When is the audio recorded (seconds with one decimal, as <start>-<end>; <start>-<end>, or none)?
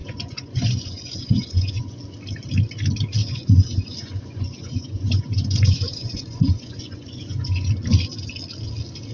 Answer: 2.0-3.2; 7.7-9.1